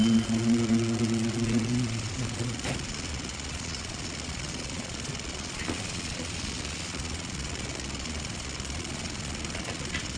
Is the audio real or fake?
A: fake